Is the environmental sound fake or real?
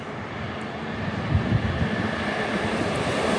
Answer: real